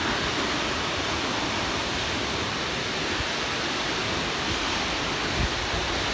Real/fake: fake